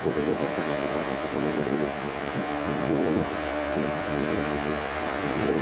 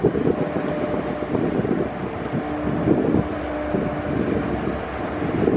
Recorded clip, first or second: second